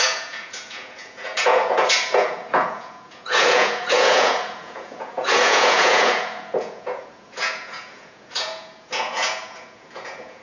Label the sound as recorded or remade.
remade